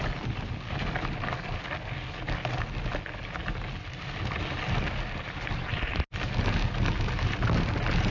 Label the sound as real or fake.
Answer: real